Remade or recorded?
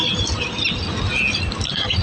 recorded